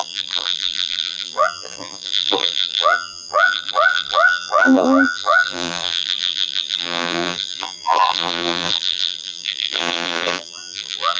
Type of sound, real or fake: fake